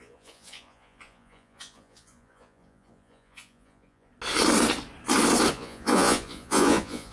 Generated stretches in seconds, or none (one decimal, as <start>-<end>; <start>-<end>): 0.0-4.1; 5.5-7.1